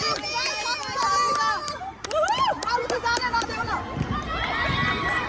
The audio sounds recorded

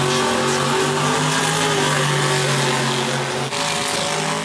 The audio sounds recorded